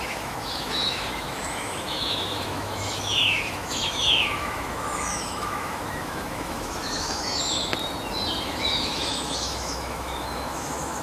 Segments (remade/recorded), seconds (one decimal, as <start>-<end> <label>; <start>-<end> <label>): 0.0-7.7 remade; 7.7-8.4 recorded; 8.4-11.0 remade